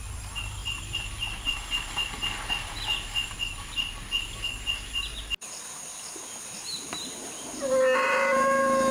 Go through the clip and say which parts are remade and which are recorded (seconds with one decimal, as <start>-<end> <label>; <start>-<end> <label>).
0.0-8.9 recorded